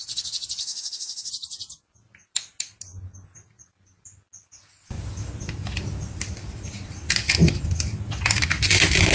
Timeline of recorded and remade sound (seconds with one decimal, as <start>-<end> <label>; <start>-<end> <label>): 0.0-0.6 recorded; 0.6-1.3 remade; 1.3-9.1 recorded